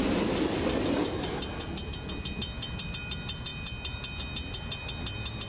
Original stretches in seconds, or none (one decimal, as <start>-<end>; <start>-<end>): 0.0-5.5